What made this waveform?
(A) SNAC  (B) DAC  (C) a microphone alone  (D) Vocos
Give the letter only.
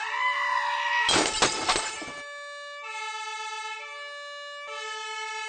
C